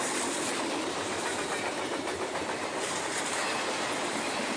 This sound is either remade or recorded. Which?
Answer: remade